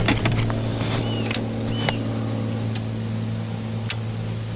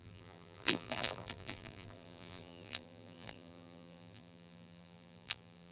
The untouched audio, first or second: first